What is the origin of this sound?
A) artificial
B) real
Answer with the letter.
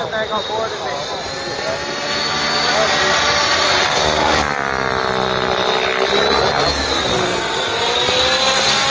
B